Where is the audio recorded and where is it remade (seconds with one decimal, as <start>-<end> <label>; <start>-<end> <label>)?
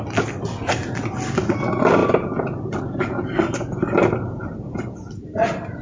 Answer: 0.0-2.0 recorded; 2.0-2.8 remade; 2.8-4.4 recorded; 4.4-5.8 remade